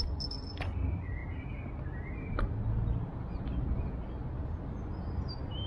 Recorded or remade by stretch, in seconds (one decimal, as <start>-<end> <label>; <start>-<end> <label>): 0.0-5.7 recorded